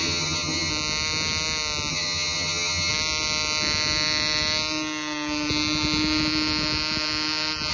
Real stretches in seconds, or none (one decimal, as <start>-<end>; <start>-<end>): 0.7-1.9; 2.9-7.7